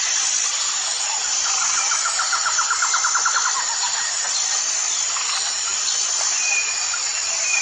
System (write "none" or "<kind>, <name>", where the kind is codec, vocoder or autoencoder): none